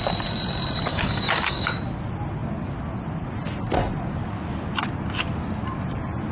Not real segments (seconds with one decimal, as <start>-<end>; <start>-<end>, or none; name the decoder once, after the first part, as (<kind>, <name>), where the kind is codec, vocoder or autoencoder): 0.9-1.7 (codec, DAC)